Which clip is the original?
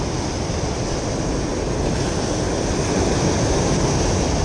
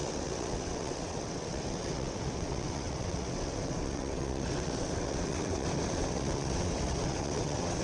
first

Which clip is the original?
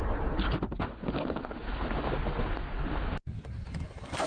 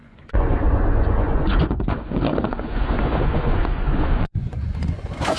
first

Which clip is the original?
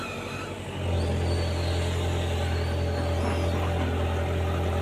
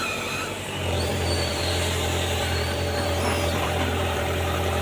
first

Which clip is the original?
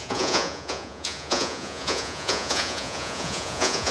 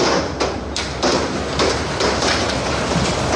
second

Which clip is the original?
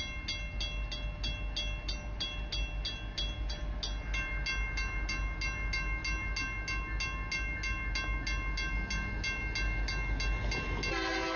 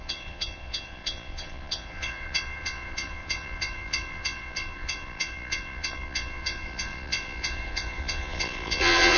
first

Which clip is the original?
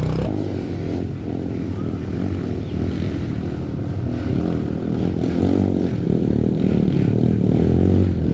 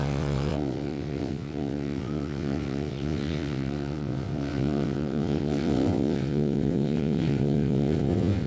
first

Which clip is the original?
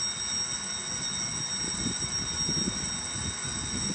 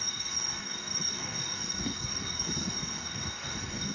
first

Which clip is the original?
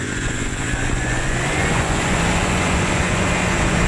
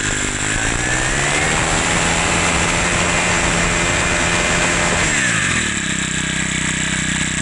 second